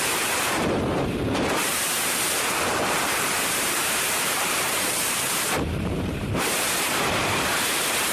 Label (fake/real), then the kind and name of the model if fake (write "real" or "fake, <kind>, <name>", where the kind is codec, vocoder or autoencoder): fake, vocoder, BigVGAN v2